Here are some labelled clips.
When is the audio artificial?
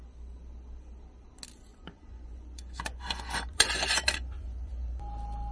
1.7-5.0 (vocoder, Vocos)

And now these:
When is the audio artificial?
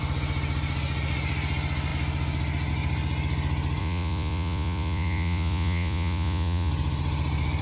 3.8-6.7 (vocoder, Vocos)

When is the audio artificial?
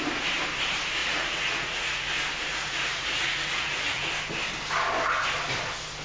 1.0-2.1 (vocoder, Vocos); 2.5-4.1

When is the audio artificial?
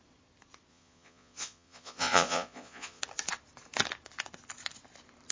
0.7-3.0 (vocoder, Vocos)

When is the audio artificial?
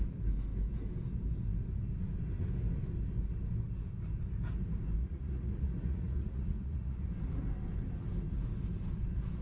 5.0-7.1 (vocoder, Vocos)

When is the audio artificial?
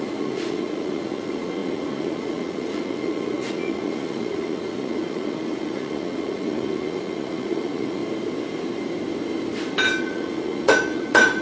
0.0-8.0 (vocoder, Vocos); 10.0-11.4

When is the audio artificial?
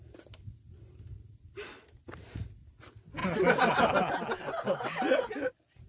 none